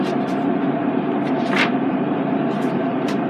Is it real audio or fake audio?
fake